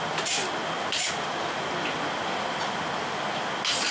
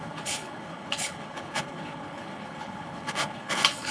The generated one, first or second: second